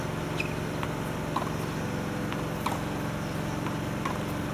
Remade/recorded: recorded